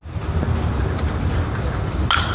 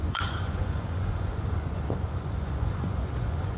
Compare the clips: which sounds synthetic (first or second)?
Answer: second